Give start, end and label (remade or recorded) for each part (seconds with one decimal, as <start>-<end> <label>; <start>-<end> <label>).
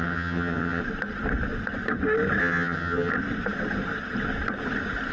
0.0-0.8 remade; 0.8-2.4 recorded; 2.4-3.1 remade; 3.1-5.1 recorded